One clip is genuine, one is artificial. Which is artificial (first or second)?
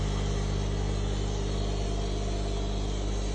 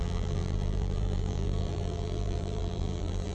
second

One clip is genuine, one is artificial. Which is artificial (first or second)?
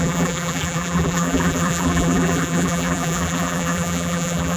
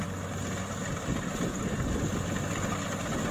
first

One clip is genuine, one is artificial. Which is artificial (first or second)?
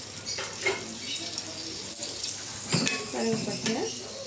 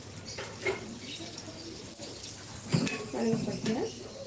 second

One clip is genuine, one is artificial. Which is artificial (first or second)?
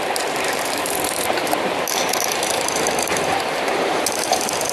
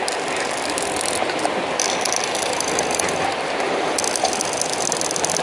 first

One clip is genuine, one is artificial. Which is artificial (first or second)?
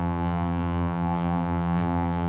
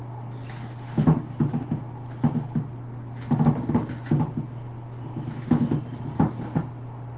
first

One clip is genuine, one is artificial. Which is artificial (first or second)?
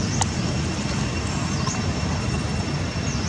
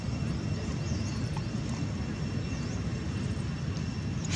first